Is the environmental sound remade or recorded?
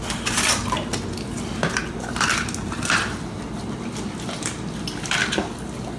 recorded